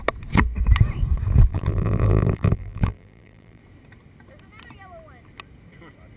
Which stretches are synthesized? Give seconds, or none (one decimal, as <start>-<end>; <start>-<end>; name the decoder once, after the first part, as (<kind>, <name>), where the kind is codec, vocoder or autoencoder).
1.5-3.6 (vocoder, BigVGAN v2)